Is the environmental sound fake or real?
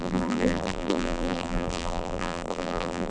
fake